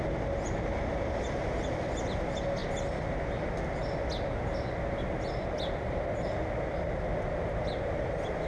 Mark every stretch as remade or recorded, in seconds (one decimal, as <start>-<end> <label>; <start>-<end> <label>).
0.0-8.5 recorded